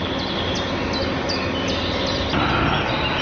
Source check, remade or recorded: recorded